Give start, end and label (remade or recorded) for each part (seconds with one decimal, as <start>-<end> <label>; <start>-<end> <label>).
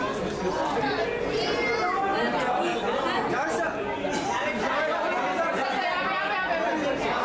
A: 0.0-7.2 recorded